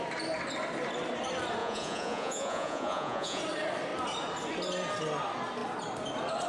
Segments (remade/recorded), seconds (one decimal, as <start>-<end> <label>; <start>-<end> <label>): 0.0-1.6 recorded; 1.6-3.4 remade; 3.4-6.5 recorded

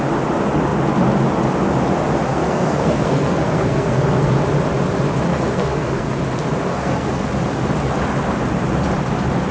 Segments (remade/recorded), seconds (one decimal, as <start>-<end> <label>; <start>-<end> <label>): 0.0-2.3 recorded; 2.3-4.3 remade; 4.3-5.3 recorded; 5.3-6.1 remade; 6.1-6.7 recorded; 6.7-7.3 remade; 7.3-9.5 recorded